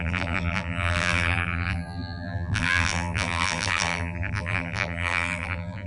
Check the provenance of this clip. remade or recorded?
remade